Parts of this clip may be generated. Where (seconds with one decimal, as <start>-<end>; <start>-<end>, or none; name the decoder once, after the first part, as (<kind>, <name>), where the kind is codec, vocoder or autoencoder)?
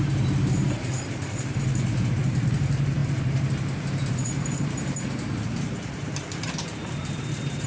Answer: 0.0-7.7 (vocoder, BigVGAN v2)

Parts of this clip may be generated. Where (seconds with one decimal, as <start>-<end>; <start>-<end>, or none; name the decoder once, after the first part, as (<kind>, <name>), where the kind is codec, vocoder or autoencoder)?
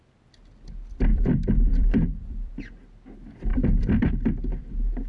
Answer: 1.1-2.6 (vocoder, BigVGAN v2); 3.5-4.1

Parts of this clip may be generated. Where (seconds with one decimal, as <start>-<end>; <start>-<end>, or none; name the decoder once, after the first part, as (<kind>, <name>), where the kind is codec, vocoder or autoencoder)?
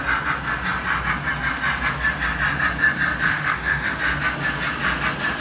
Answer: 3.3-3.9 (autoencoder, DAC-VAE)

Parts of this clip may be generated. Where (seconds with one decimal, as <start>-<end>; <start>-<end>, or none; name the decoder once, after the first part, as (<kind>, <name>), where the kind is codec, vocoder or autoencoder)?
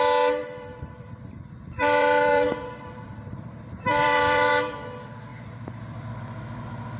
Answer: 0.4-4.5 (vocoder, BigVGAN v2); 5.3-6.2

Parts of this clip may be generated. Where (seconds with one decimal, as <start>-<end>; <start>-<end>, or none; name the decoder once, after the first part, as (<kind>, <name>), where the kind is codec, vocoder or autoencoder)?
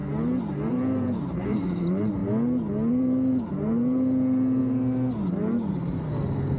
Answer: 0.7-2.2 (vocoder, BigVGAN v2); 2.9-4.6; 5.3-6.6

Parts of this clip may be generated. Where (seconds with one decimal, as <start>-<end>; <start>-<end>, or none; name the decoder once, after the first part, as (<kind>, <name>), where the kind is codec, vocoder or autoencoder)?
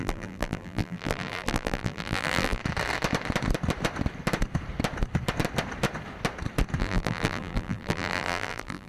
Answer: 0.0-2.6 (vocoder, BigVGAN v2); 6.8-8.9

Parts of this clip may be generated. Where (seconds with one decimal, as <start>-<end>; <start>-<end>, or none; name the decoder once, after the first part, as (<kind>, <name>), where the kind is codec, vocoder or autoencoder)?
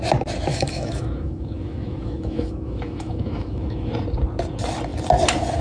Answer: 0.5-3.9 (autoencoder, DAC-VAE)